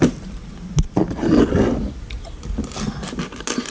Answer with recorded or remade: recorded